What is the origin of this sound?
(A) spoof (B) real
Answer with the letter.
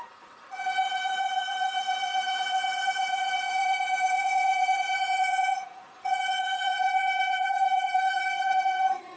A